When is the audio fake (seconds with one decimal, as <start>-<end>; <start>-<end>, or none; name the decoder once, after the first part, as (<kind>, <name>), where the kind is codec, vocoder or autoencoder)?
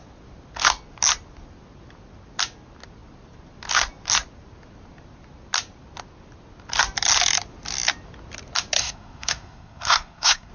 8.8-10.5 (codec, SNAC)